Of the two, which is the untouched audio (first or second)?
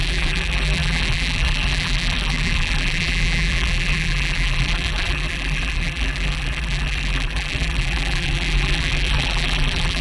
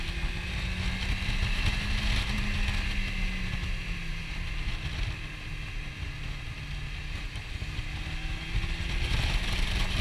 second